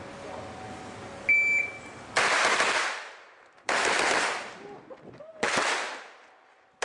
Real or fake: real